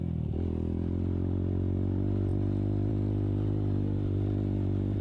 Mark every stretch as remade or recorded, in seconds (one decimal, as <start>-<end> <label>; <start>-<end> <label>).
0.0-5.0 recorded